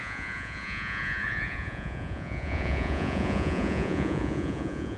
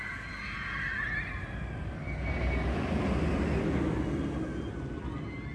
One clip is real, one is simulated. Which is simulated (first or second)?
first